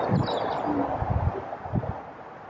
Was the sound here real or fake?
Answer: real